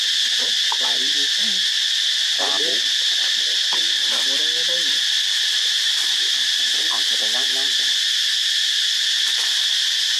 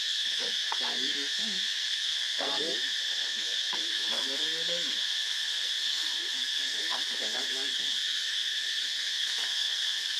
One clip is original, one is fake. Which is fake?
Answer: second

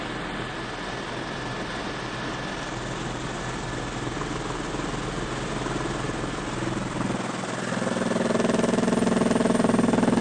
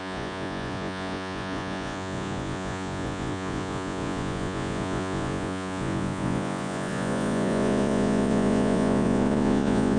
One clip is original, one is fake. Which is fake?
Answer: second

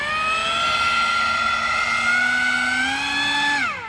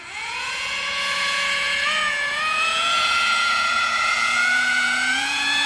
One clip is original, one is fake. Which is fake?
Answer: second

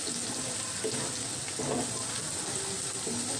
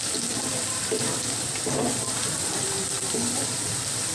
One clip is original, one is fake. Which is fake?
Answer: second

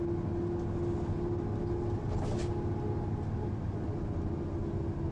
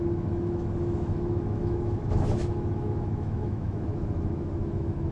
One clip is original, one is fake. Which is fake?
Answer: second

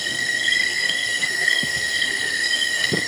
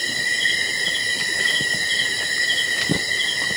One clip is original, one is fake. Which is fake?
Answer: first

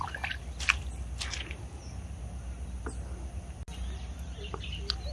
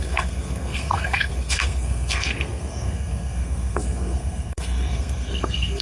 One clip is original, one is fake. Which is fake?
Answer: second